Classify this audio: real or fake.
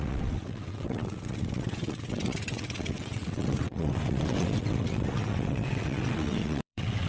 fake